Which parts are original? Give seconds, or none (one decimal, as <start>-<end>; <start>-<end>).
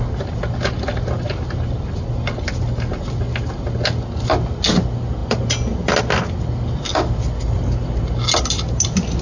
0.0-9.2